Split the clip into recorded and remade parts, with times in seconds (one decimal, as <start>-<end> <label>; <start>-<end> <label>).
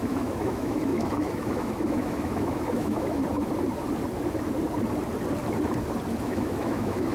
0.0-3.2 remade; 3.2-6.2 recorded; 6.2-7.1 remade